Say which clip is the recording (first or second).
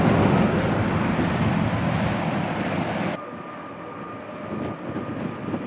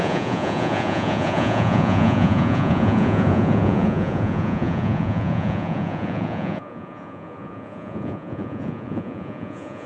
first